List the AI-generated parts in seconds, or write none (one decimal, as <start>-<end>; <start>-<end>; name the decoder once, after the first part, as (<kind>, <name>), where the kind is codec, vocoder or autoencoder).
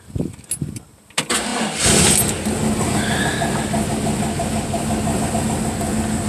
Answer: none